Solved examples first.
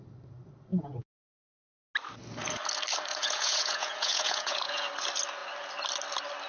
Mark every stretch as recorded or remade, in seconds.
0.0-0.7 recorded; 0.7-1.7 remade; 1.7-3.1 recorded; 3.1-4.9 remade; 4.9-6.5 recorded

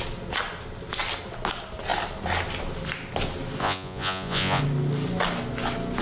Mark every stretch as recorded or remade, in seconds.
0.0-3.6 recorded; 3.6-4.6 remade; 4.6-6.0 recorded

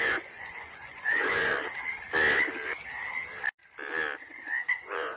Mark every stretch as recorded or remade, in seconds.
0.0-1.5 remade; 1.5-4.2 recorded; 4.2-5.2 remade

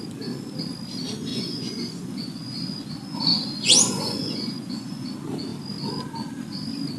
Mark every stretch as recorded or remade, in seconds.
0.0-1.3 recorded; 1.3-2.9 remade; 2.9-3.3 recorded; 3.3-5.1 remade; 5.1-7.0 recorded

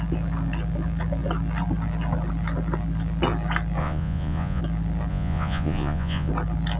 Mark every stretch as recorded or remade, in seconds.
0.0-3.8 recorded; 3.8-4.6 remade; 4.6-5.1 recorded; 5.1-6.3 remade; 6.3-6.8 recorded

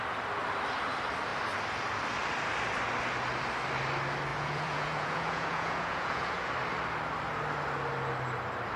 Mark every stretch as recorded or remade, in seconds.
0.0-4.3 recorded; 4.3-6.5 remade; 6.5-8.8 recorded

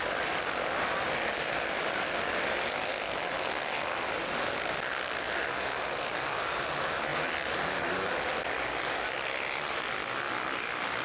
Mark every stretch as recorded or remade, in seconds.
0.0-11.0 recorded